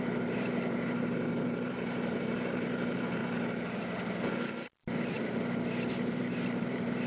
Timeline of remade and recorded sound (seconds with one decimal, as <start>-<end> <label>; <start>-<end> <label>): 0.0-3.2 remade; 3.2-5.9 recorded; 5.9-7.1 remade